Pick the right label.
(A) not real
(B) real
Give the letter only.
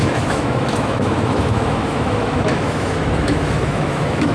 A